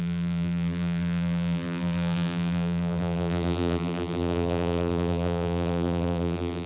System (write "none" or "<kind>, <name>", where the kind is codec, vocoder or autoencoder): vocoder, BigVGAN v2